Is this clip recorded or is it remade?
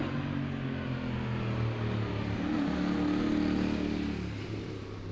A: recorded